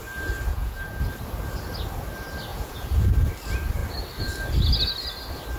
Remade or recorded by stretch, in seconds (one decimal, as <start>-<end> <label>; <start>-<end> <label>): 0.0-0.5 recorded; 0.5-1.0 remade; 1.0-2.5 recorded; 2.5-3.1 remade; 3.1-5.6 recorded